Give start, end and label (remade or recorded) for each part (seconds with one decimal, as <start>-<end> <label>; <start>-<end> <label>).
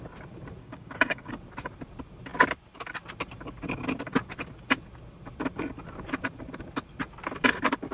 0.0-0.6 recorded; 0.6-1.3 remade; 1.3-7.9 recorded